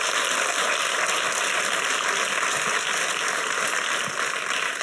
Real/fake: real